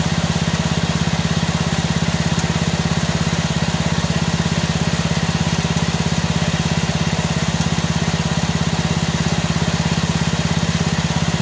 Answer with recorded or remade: recorded